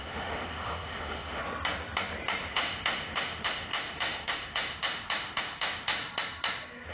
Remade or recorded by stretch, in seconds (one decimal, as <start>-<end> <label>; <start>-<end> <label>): 0.0-1.4 remade; 1.4-2.5 recorded; 2.5-6.0 remade; 6.0-6.9 recorded